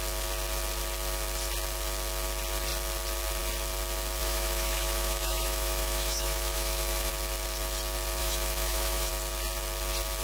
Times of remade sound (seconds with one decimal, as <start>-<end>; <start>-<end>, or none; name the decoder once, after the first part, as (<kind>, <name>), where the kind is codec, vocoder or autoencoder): 4.2-7.1 (autoencoder, DAC-VAE); 8.2-9.1